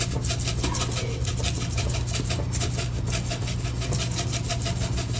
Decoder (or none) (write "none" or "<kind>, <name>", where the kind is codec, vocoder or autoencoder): none